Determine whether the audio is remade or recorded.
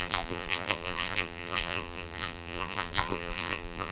remade